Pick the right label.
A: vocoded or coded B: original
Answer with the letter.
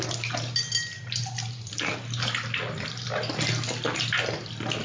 B